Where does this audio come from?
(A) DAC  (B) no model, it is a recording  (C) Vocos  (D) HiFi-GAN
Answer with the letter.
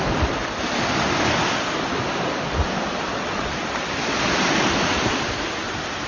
B